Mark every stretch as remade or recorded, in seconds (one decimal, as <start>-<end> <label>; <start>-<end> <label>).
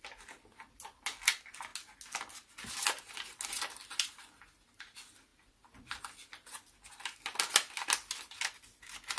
0.0-9.2 recorded